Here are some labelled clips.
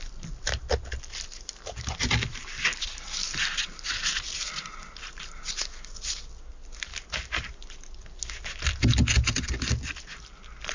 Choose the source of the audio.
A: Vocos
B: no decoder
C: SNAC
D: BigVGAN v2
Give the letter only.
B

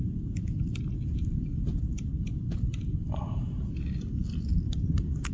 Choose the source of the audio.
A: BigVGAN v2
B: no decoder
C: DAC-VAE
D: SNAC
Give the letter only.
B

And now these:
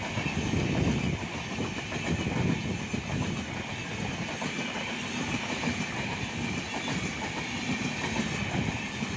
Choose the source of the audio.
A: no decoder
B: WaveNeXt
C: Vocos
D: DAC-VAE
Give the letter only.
A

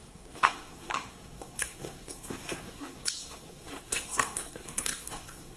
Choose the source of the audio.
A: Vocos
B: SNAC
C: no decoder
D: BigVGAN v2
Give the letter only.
B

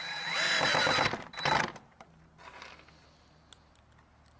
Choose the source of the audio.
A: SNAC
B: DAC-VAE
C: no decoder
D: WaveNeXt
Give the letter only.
C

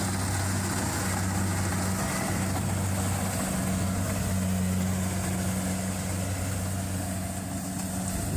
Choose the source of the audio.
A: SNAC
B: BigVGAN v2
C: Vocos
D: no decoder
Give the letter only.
D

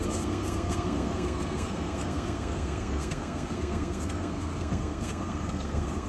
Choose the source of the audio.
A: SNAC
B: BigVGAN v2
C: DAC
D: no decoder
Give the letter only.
A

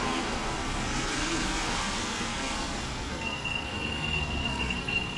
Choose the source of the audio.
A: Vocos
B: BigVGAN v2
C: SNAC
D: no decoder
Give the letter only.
C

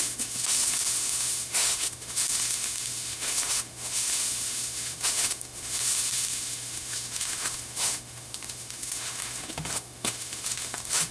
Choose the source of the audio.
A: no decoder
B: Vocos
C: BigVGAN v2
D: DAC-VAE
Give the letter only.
D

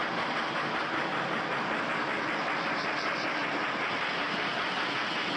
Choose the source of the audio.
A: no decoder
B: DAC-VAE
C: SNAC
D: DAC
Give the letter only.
A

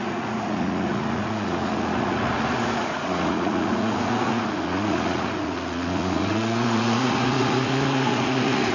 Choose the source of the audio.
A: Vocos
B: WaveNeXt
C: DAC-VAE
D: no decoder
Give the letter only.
A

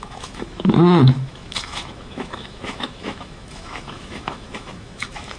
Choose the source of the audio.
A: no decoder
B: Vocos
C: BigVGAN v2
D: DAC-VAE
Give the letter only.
D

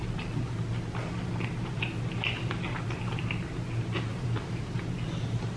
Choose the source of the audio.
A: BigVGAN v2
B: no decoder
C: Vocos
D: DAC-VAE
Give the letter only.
B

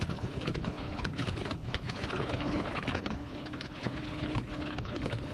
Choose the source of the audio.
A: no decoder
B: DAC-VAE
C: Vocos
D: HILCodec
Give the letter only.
D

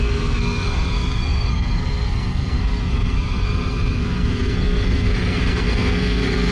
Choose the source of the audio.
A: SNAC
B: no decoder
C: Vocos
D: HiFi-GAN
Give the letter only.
A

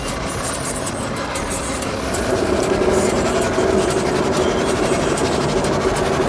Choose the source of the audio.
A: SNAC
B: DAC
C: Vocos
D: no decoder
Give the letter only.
D